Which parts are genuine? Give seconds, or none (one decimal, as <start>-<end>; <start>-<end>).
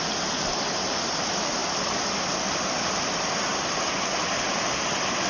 0.0-5.3